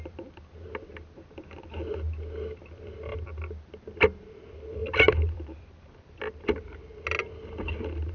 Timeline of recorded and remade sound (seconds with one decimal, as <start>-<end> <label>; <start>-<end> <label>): 0.0-4.8 recorded; 4.8-6.2 remade; 6.2-8.1 recorded